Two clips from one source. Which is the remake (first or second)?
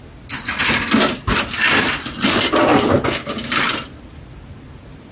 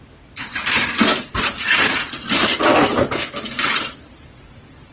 second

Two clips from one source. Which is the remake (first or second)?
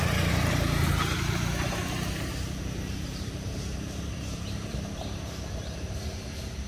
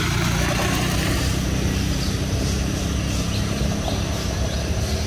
first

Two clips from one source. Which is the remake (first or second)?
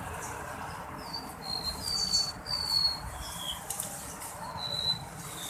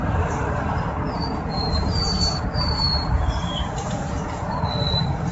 second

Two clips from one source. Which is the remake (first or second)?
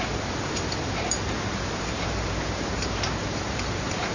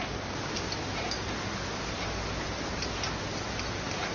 first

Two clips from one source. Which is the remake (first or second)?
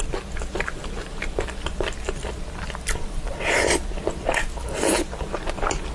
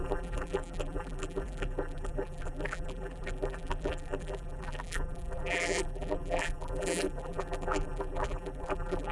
second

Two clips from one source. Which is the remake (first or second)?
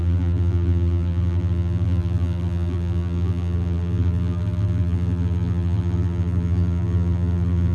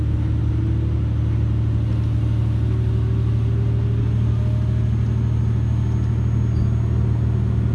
first